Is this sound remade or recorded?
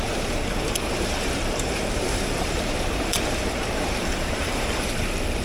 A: remade